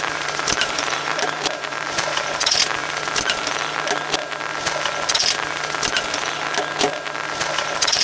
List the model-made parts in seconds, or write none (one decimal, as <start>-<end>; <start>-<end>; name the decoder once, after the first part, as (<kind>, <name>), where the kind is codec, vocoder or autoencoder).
0.0-2.8 (vocoder, BigVGAN v2); 7.5-8.0